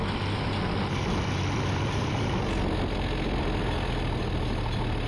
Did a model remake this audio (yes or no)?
no